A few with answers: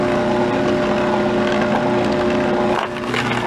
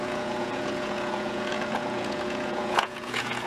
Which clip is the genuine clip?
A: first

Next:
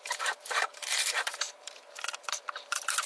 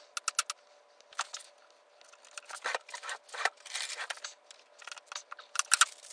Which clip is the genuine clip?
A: second